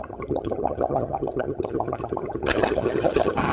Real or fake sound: fake